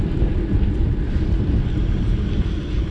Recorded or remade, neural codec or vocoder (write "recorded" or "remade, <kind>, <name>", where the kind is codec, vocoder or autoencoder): recorded